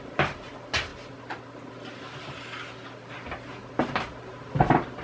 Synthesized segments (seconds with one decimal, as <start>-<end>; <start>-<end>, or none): none